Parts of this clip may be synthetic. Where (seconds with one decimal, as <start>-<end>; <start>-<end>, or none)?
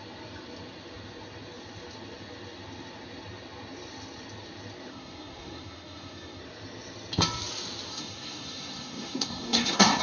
4.9-6.4; 7.9-10.0